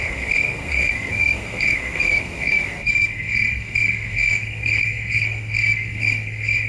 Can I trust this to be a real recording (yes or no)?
no